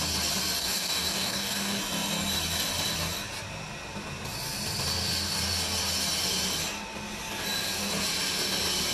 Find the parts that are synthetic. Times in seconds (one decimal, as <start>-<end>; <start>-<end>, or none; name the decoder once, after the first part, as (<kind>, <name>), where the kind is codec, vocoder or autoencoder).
0.6-1.8 (codec, DAC)

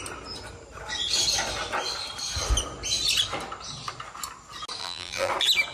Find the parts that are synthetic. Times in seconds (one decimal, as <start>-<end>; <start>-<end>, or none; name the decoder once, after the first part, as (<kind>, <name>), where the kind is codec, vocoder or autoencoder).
4.8-5.3 (vocoder, BigVGAN v2)

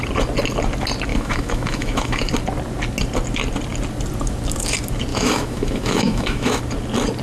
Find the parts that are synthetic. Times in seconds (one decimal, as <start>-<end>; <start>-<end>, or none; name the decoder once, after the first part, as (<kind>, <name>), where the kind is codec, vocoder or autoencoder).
1.1-2.3 (autoencoder, DAC-VAE); 5.1-6.6

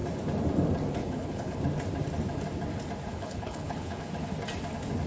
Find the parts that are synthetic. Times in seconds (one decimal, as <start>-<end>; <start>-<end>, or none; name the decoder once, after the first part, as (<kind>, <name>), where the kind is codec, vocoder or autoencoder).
1.0-1.6 (codec, HILCodec); 3.1-4.1

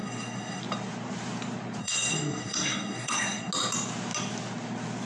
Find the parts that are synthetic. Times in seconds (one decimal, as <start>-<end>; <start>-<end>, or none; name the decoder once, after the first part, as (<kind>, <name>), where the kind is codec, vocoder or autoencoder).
0.0-0.6 (codec, SNAC); 1.8-3.5

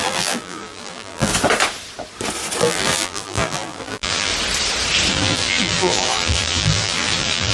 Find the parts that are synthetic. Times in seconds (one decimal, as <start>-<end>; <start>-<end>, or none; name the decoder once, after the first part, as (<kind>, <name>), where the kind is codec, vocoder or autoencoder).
0.0-1.3 (vocoder, BigVGAN v2); 2.6-4.3; 5.1-7.5

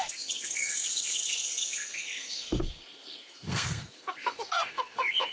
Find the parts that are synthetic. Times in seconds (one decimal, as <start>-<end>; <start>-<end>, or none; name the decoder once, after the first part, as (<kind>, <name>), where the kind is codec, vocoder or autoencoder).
0.0-5.3 (codec, SNAC)